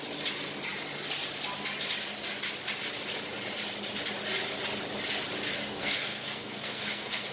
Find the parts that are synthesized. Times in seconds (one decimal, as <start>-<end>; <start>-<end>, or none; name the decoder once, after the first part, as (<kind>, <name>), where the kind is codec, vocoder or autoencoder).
5.6-7.3 (codec, SNAC)